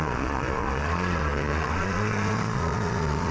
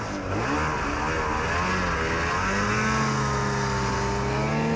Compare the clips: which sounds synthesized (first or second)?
first